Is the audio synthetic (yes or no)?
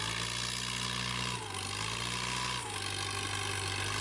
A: no